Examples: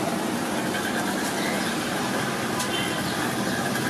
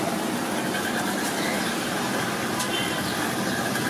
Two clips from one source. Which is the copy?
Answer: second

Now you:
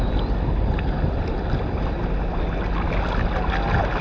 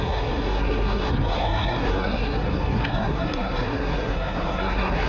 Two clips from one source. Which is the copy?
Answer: second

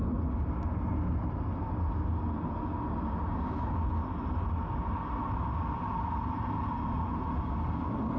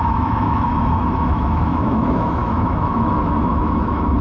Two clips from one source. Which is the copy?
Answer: second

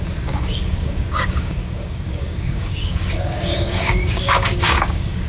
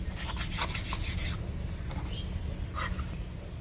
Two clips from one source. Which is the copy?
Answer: first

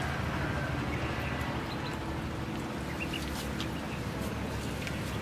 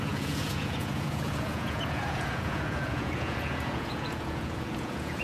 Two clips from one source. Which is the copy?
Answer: second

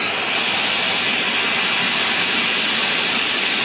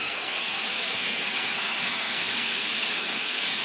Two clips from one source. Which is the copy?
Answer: second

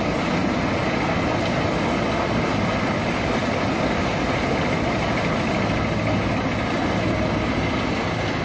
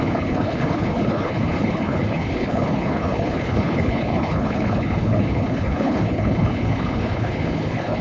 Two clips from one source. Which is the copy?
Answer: second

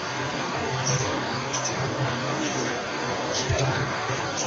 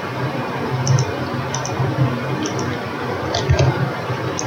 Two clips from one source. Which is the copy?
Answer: first